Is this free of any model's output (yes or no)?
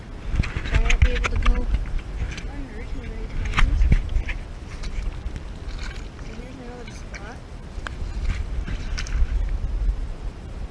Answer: yes